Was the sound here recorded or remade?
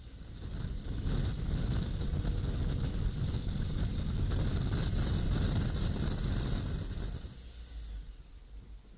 recorded